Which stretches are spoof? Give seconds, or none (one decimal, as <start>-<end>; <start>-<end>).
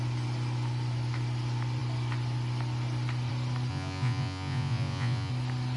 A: 3.7-5.3